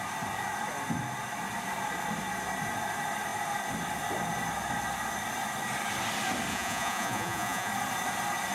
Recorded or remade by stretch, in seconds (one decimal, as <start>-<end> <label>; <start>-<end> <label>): 0.0-6.5 recorded; 6.5-7.7 remade; 7.7-8.5 recorded